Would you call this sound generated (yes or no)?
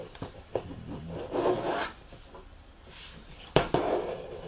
yes